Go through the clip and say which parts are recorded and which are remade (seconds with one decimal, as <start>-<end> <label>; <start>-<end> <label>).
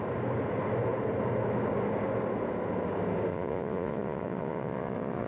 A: 0.0-3.3 recorded; 3.3-5.3 remade